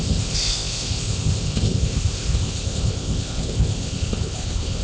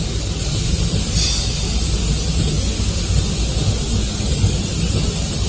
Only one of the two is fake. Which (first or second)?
first